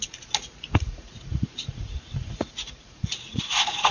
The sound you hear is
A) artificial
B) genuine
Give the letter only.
A